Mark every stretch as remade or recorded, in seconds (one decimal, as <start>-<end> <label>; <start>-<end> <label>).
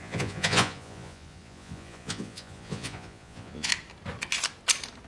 0.0-3.7 remade; 3.7-5.1 recorded